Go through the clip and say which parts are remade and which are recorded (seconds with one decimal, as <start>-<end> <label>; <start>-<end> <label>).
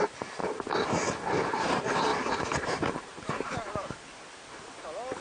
0.0-5.2 recorded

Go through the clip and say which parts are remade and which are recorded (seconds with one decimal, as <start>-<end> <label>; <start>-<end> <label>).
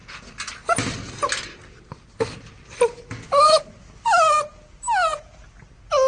0.0-6.1 recorded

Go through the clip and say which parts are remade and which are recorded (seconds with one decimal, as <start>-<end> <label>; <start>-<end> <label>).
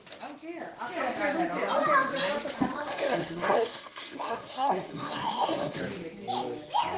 0.0-2.8 recorded; 2.8-5.8 remade; 5.8-7.0 recorded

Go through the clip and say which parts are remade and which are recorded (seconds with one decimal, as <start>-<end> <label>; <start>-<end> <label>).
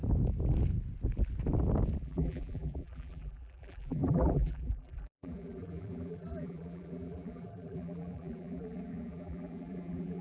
0.0-2.0 recorded; 2.0-10.2 remade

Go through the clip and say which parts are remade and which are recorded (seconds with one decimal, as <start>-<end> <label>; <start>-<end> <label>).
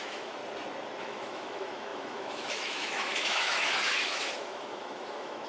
0.0-0.4 remade; 0.4-1.0 recorded; 1.0-5.5 remade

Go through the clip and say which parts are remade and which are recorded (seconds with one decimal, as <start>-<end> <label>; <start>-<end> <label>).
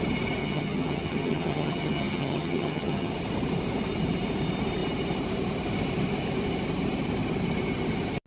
0.0-0.4 recorded; 0.4-3.1 remade; 3.1-8.3 recorded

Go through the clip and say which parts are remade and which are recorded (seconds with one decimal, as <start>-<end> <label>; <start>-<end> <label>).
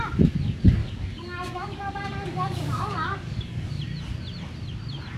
0.0-0.8 recorded; 0.8-3.8 remade; 3.8-5.2 recorded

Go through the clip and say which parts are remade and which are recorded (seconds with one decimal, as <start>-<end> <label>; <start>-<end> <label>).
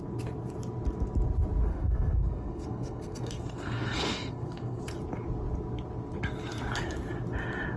0.0-1.7 recorded; 1.7-4.8 remade; 4.8-7.8 recorded